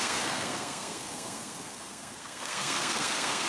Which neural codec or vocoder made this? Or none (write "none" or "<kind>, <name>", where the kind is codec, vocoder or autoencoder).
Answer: codec, SNAC